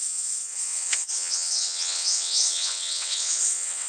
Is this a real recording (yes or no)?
no